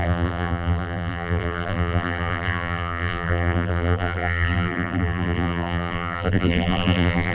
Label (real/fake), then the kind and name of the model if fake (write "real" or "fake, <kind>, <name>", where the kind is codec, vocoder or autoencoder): fake, vocoder, BigVGAN v2